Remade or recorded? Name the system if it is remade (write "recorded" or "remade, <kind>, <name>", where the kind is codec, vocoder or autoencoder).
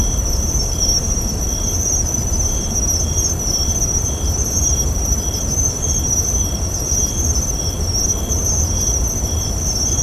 remade, vocoder, BigVGAN v2